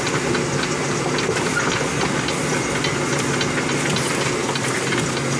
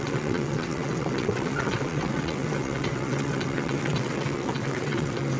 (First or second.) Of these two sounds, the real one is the first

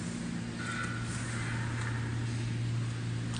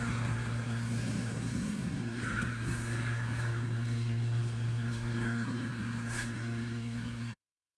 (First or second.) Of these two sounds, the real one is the first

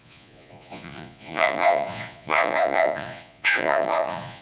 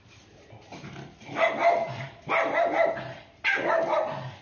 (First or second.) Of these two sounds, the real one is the second